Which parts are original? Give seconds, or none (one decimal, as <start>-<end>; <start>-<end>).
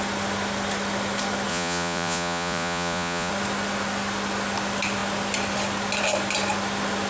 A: 0.0-1.5; 3.3-7.1